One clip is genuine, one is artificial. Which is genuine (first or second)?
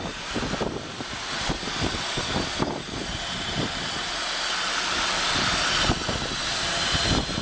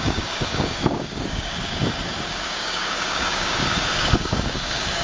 first